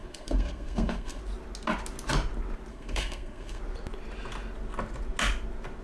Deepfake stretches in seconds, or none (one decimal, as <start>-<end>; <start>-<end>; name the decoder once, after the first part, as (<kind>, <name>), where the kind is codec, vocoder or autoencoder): 0.0-1.2 (codec, SNAC); 2.7-3.6